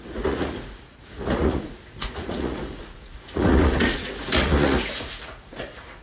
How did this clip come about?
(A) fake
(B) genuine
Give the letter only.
A